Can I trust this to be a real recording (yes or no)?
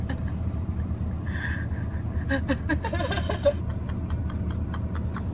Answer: yes